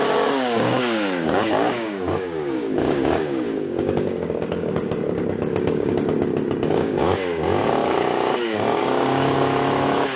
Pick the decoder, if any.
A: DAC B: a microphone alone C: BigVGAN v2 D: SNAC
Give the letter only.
A